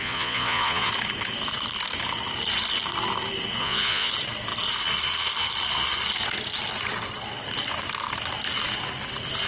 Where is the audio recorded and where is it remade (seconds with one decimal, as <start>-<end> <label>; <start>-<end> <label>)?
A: 0.0-0.9 remade; 0.9-3.6 recorded; 3.6-4.1 remade; 4.1-9.5 recorded